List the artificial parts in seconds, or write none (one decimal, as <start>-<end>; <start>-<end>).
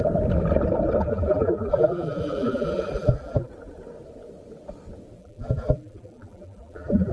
1.0-3.5; 5.2-7.1